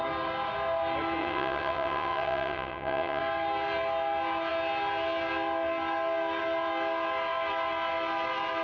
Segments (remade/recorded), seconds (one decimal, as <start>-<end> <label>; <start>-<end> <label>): 0.0-1.2 recorded; 1.2-3.2 remade; 3.2-8.6 recorded